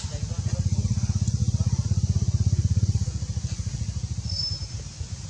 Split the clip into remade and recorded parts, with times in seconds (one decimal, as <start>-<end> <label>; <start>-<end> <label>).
0.0-1.4 recorded; 1.4-4.3 remade; 4.3-5.3 recorded